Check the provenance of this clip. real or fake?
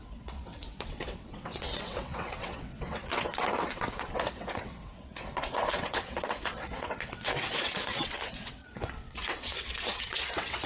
fake